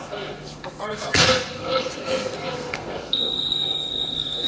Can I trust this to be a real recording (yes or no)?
no